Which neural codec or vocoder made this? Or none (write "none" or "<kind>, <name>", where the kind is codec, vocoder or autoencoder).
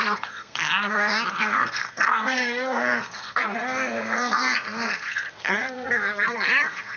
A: codec, SNAC